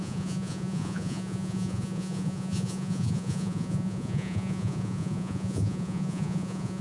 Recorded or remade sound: remade